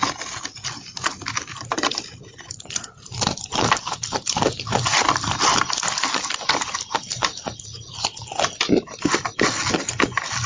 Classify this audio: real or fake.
real